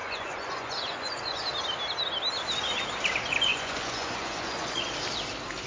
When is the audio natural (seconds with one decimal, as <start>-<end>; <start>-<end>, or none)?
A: 1.4-3.5; 4.8-5.7